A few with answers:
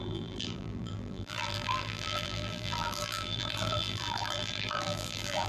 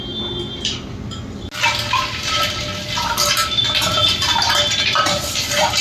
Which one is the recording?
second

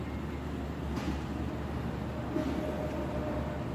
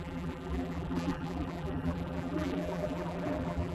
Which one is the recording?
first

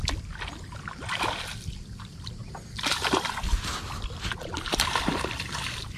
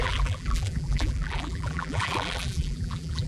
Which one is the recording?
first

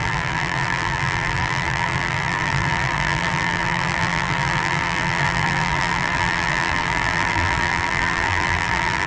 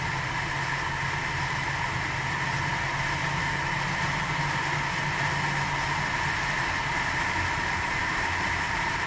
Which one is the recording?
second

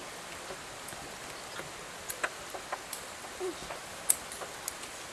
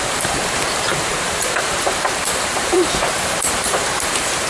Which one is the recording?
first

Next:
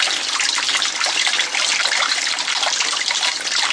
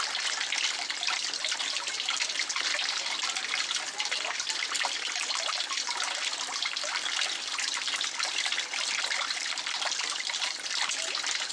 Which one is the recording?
first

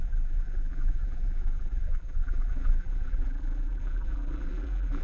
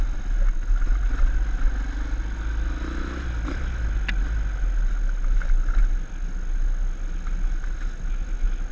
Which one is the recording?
second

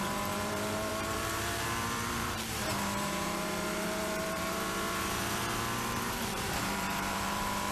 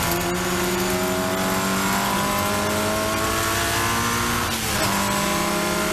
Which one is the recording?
second